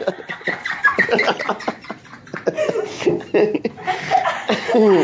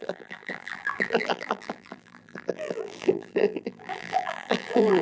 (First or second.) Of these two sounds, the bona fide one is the first